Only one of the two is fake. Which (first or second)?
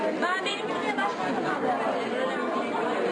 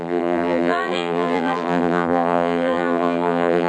second